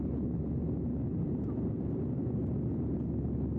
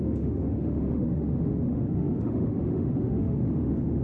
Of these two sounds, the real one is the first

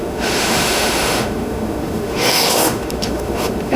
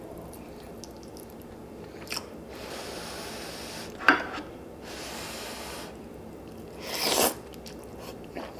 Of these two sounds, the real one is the second